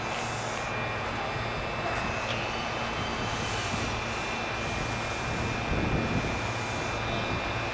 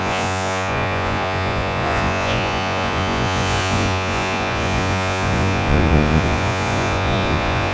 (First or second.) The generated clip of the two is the second